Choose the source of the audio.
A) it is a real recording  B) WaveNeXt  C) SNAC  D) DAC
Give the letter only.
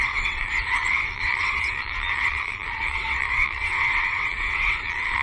B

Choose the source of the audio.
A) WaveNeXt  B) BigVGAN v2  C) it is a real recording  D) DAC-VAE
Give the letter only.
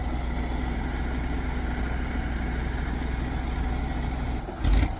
C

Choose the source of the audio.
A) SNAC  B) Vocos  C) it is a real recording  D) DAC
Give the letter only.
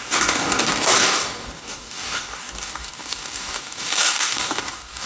D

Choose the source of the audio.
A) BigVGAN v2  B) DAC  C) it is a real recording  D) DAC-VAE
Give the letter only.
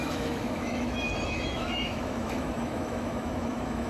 D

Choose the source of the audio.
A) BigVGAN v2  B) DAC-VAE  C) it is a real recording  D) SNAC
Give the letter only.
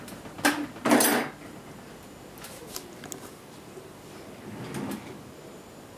C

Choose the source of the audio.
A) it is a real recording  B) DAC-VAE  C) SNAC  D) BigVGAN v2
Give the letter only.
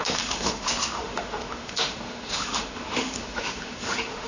B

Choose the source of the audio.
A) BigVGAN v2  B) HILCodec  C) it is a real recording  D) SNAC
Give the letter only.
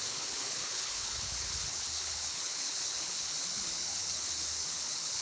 B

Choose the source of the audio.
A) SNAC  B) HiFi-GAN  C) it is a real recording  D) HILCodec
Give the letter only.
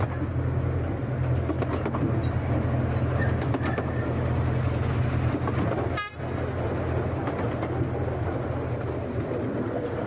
C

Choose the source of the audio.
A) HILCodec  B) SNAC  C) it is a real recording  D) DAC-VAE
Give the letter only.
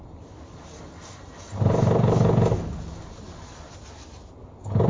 C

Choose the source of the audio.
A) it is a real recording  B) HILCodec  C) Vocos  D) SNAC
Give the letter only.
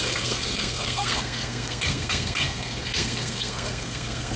D